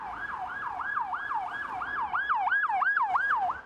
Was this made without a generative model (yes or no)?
yes